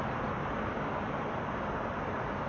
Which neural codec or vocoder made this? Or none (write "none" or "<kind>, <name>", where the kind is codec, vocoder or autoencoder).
none